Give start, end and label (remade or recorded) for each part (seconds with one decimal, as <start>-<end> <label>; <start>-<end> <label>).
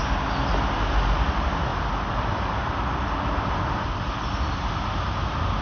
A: 0.0-5.6 recorded